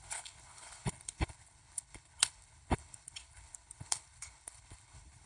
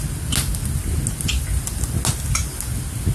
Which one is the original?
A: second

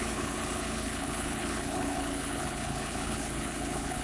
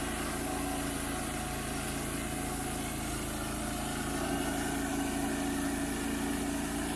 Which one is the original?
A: second